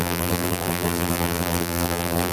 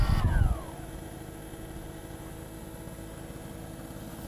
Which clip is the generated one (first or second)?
first